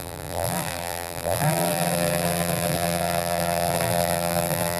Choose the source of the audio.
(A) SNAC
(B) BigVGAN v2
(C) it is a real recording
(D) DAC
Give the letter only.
B